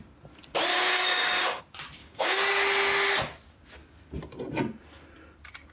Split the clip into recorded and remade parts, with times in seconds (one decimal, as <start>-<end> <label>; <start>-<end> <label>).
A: 0.0-0.7 recorded; 0.7-1.6 remade; 1.6-2.0 recorded; 2.0-2.5 remade; 2.5-5.7 recorded